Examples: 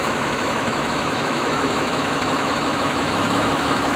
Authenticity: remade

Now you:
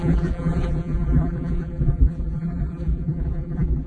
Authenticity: remade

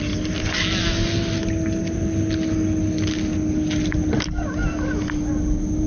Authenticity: recorded